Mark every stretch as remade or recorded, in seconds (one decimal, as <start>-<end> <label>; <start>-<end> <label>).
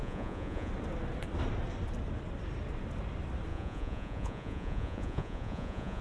0.0-0.7 remade; 0.7-3.5 recorded; 3.5-6.0 remade